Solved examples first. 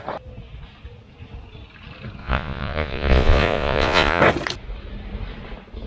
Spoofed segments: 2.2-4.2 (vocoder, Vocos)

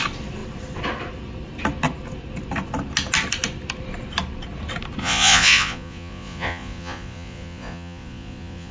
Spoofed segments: 5.0-8.7 (vocoder, Vocos)

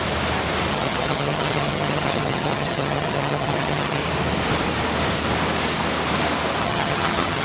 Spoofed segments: 0.7-4.0 (vocoder, HiFi-GAN); 6.6-7.4

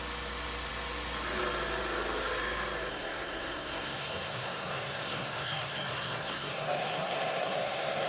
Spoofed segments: 2.9-8.1 (codec, SNAC)

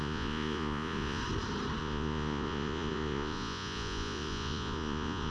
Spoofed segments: 0.0-1.2 (vocoder, Vocos); 1.8-5.3

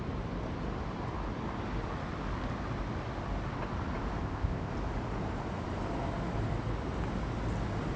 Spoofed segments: 4.2-4.7 (codec, ZipCodec)

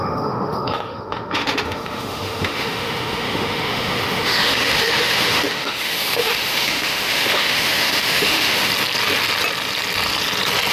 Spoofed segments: 0.0-8.7 (autoencoder, DAC-VAE)

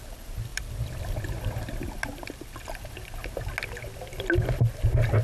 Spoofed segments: 0.5-3.4 (vocoder, BigVGAN v2)